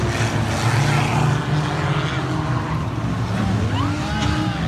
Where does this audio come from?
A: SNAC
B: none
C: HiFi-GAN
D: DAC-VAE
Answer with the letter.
B